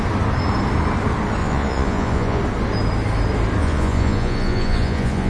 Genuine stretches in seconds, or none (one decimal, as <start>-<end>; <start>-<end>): 0.0-1.4; 2.4-3.6